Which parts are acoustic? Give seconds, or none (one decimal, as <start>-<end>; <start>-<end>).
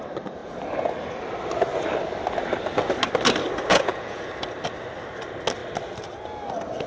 0.0-3.7; 4.3-6.9